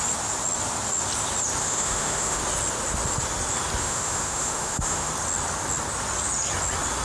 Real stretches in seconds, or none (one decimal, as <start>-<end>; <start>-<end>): 0.0-1.6; 2.4-3.8; 5.1-7.0